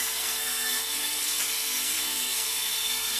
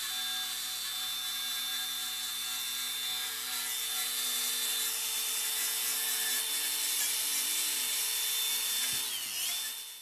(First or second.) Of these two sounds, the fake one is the first